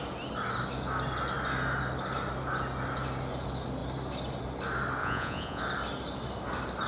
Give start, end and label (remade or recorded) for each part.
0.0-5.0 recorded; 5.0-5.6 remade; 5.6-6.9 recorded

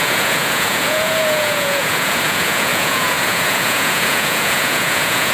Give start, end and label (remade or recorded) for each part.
0.0-5.3 remade

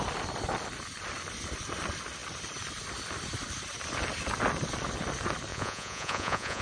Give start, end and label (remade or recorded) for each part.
0.0-5.5 recorded; 5.5-6.6 remade

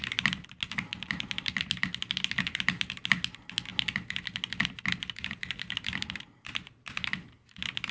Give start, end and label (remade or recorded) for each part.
0.0-7.9 recorded